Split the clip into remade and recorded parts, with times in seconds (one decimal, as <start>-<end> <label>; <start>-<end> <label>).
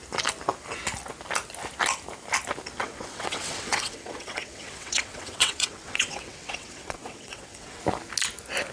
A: 0.0-2.8 recorded; 2.8-7.8 remade; 7.8-8.7 recorded